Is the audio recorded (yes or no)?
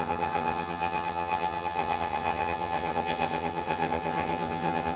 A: no